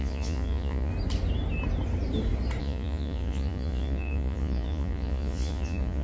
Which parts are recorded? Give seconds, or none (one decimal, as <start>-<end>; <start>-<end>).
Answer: 0.9-2.6